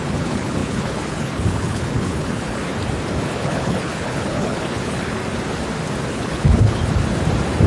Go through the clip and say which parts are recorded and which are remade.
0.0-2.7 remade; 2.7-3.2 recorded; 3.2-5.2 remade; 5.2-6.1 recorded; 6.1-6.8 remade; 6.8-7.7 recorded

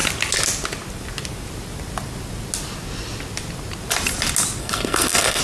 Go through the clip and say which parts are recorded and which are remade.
0.0-4.6 recorded; 4.6-5.4 remade

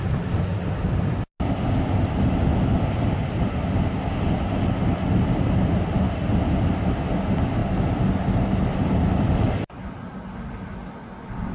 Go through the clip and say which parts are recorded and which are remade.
0.0-11.5 recorded

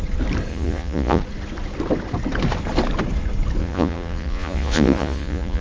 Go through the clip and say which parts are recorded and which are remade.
0.0-0.5 recorded; 0.5-1.2 remade; 1.2-3.6 recorded; 3.6-5.6 remade

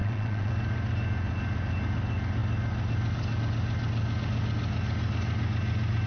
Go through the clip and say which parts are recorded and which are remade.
0.0-0.5 remade; 0.5-6.1 recorded